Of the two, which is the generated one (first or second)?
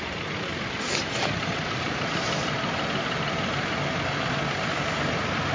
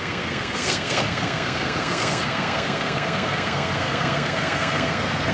second